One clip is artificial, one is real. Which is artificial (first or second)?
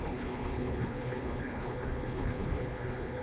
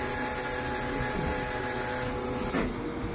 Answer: first